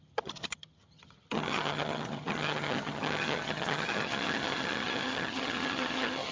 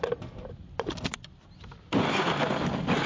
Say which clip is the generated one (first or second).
first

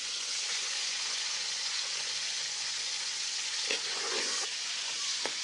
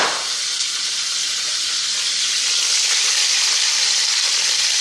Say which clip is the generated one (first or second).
first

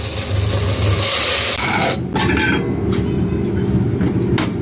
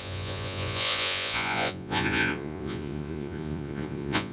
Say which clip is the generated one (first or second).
second